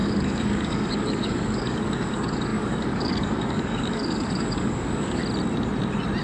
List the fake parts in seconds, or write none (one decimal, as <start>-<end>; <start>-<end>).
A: 0.0-5.2